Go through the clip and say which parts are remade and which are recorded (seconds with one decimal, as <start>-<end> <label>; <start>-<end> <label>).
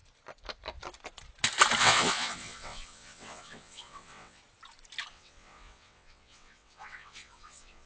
0.0-1.8 recorded; 1.8-4.4 remade; 4.4-5.1 recorded; 5.1-7.9 remade